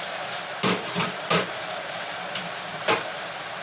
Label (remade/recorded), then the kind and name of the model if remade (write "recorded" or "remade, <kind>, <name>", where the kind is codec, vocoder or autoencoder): remade, vocoder, BigVGAN v2